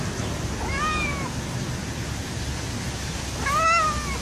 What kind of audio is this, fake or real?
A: real